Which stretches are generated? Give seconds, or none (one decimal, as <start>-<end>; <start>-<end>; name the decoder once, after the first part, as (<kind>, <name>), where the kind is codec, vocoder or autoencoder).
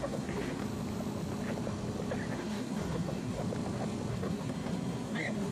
0.0-0.6 (codec, SNAC); 2.3-3.4; 4.1-5.5